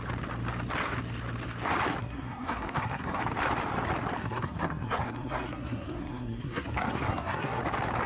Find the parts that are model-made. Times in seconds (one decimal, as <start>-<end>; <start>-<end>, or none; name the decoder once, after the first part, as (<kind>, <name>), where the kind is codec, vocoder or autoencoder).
2.0-3.2 (codec, SNAC); 4.2-7.6